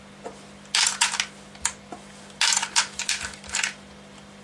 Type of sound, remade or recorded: recorded